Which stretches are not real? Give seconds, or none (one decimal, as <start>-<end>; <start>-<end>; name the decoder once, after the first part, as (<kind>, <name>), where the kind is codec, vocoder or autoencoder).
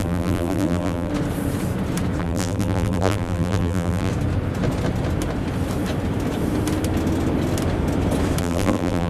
0.0-1.1 (vocoder, BigVGAN v2); 2.2-4.1; 8.4-9.1